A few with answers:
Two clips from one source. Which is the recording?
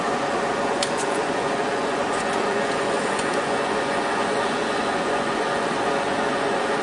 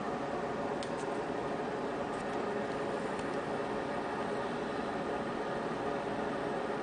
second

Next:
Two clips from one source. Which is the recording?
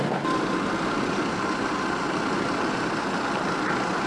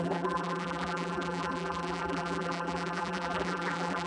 first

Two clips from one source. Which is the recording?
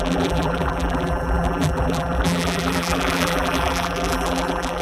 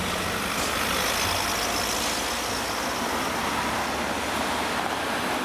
second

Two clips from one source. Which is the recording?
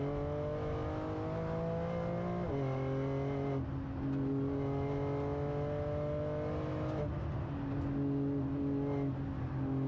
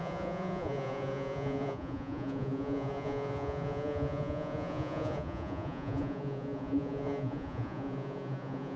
first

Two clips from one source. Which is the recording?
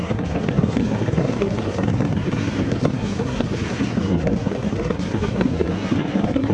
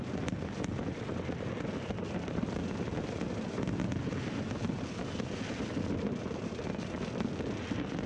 second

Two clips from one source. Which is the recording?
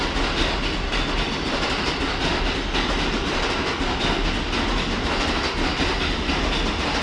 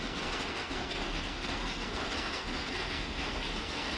first